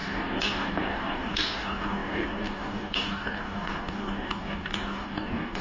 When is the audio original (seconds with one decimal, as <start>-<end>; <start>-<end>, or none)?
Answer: none